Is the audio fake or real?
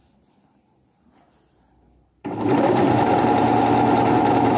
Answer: fake